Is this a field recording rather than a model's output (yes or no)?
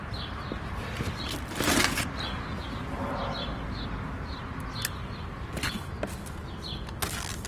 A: yes